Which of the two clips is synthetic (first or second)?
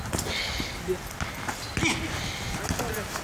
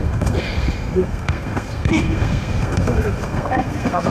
second